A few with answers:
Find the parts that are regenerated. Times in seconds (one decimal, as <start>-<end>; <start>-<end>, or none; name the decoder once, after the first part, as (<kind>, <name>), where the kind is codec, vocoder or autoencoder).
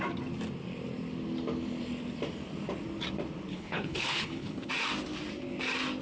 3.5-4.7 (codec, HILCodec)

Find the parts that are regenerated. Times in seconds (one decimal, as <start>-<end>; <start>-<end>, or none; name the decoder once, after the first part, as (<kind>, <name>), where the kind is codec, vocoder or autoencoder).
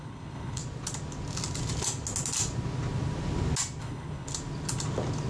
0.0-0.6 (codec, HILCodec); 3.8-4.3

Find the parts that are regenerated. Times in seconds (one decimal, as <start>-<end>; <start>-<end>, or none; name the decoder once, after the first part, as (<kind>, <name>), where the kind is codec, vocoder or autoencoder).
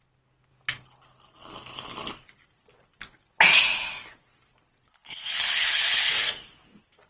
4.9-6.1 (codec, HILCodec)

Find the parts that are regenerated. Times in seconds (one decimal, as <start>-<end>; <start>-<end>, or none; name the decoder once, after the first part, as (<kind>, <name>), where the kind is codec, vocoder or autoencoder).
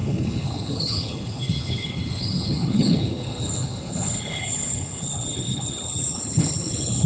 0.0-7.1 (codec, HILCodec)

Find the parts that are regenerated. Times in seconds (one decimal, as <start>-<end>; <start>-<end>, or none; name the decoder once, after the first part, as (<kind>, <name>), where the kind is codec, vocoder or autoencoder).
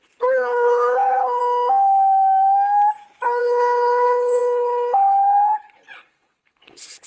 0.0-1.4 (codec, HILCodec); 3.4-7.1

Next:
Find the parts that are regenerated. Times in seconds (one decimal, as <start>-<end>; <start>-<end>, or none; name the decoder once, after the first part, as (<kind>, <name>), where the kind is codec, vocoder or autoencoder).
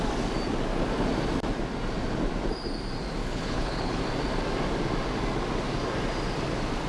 3.2-4.0 (codec, HILCodec)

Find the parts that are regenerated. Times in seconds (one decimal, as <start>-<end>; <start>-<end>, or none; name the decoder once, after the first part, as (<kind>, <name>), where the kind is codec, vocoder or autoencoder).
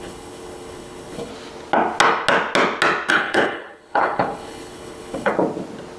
0.0-1.3 (codec, HILCodec); 3.1-5.3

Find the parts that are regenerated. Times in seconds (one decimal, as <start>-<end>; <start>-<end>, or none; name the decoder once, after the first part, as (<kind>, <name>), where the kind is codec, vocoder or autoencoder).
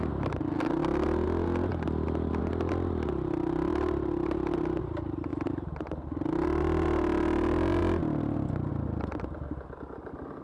none